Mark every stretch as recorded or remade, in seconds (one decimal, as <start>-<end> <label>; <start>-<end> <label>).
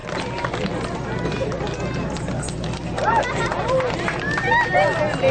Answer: 0.0-5.3 recorded